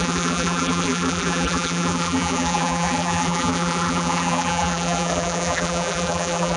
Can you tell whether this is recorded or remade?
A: remade